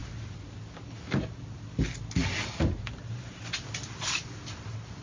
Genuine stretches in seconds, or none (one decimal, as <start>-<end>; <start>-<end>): 0.0-2.2; 3.7-5.0